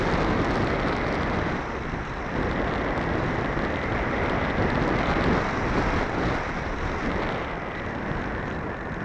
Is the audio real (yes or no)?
yes